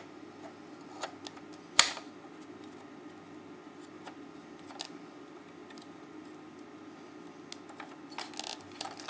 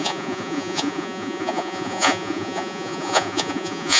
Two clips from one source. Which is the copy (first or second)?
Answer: second